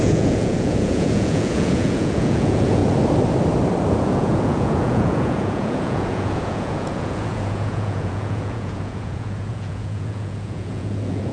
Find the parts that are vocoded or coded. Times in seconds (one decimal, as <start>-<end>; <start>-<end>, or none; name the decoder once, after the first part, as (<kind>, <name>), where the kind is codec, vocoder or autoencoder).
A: 0.0-2.8 (vocoder, Vocos); 3.9-11.3